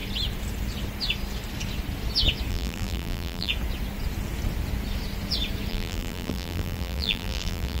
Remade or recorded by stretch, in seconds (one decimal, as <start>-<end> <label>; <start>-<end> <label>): 0.0-2.5 recorded; 2.5-3.5 remade; 3.5-5.7 recorded; 5.7-7.8 remade